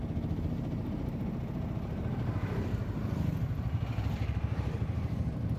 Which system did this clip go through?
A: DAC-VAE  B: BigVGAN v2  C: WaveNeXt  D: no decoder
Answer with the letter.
D